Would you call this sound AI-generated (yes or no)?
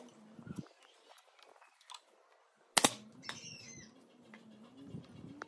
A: no